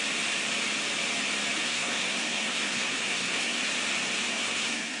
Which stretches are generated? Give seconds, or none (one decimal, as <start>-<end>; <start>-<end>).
1.6-3.6; 4.3-5.0